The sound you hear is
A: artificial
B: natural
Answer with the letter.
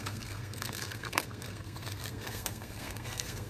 A